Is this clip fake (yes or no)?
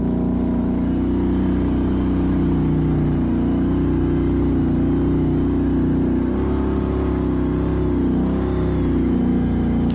no